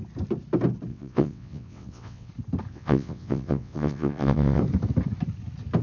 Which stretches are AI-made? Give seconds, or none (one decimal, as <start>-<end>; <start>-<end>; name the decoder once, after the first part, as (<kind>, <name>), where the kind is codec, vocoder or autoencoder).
0.9-2.3 (vocoder, WaveNeXt); 2.7-4.6